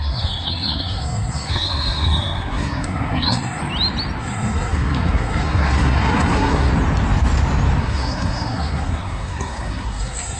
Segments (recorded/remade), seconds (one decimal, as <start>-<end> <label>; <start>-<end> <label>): 0.0-3.6 remade; 3.6-4.2 recorded; 4.2-6.7 remade; 6.7-7.8 recorded; 7.8-10.4 remade